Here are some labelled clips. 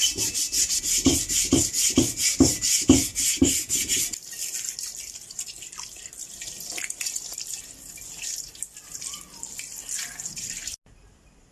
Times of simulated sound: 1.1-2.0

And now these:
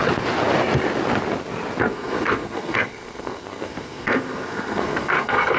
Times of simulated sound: 1.9-5.6